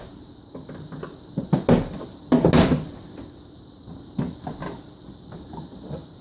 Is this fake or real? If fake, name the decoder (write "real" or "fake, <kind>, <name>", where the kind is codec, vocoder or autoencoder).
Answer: real